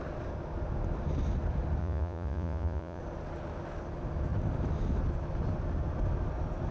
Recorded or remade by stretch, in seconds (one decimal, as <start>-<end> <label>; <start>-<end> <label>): 0.0-1.8 recorded; 1.8-3.0 remade; 3.0-6.7 recorded